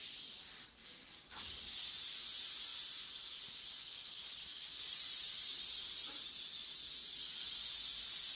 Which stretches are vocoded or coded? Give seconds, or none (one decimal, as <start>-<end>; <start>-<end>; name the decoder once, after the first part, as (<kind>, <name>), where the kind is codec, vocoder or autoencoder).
0.8-1.5 (vocoder, BigVGAN v2); 2.7-6.3